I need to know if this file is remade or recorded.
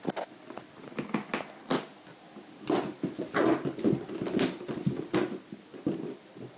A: remade